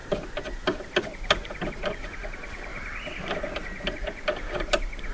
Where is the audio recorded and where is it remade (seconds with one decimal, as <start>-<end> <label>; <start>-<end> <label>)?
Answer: 0.0-5.1 recorded